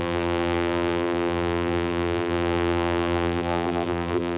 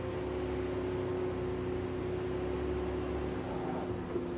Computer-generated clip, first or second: first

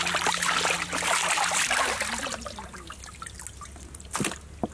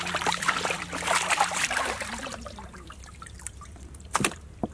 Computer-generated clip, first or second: second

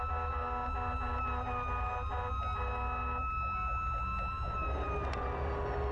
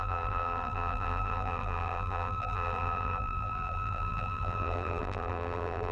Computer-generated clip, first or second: second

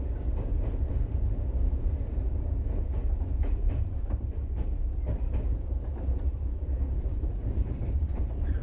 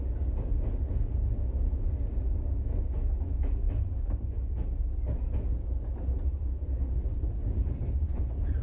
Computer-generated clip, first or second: first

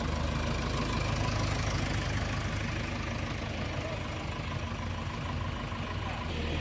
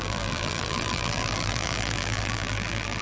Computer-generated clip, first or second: second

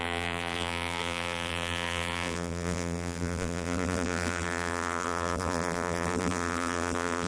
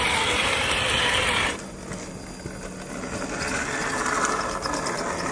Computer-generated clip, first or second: first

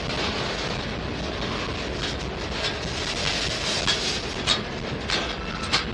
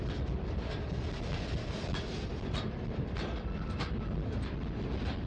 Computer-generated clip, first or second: second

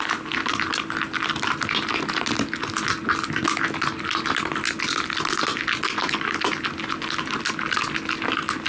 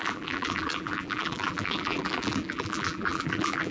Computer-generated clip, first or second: second